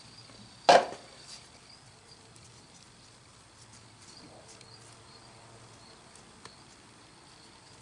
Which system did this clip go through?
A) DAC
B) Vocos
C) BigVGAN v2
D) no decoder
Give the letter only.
D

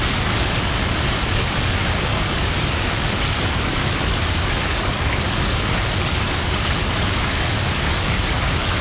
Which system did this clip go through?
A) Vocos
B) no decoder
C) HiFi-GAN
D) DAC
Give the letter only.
D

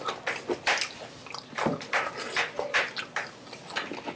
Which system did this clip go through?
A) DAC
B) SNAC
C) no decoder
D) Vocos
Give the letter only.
C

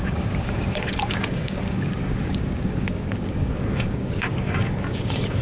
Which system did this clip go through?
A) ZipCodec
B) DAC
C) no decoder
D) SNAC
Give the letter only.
B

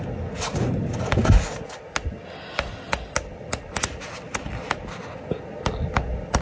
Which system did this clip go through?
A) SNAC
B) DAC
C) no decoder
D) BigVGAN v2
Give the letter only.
C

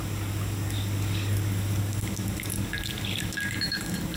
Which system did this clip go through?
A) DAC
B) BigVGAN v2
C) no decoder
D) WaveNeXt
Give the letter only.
A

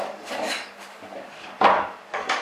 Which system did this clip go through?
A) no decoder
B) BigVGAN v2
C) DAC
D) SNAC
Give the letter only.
C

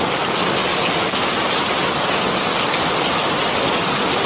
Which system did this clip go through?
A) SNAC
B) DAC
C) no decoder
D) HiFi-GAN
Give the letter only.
C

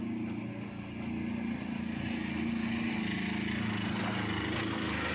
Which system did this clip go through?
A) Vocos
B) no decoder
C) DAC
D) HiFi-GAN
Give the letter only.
B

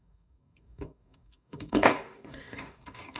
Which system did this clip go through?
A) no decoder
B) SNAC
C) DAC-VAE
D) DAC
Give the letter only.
D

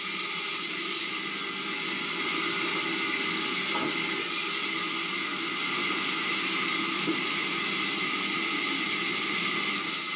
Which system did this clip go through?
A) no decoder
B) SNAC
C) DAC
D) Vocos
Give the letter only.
A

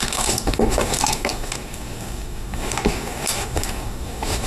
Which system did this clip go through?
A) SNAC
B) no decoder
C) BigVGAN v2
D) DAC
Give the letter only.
D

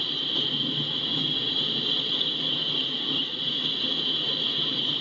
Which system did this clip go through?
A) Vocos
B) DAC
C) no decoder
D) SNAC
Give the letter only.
C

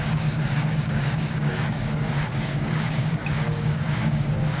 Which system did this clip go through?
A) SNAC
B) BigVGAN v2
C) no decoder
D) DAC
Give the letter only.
D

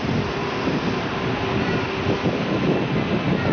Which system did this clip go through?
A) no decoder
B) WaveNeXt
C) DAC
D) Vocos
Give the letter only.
A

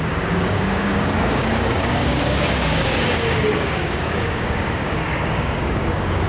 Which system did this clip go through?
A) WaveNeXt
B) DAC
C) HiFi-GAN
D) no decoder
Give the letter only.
B